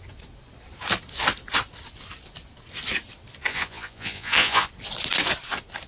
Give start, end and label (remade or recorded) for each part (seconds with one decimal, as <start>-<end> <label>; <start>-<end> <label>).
0.0-3.5 recorded; 3.5-4.7 remade; 4.7-5.9 recorded